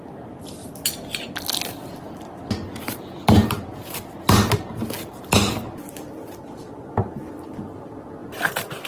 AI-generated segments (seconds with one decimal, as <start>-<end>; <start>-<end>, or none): none